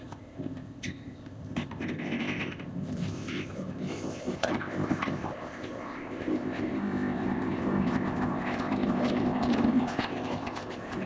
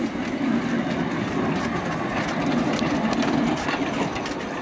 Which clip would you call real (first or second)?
second